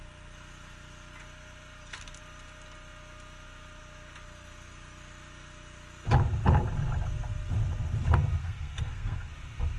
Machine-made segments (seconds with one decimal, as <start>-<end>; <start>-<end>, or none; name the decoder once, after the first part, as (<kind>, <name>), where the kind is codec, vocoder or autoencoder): 8.4-9.3 (codec, SNAC)